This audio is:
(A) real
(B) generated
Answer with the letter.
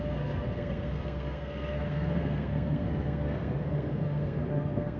B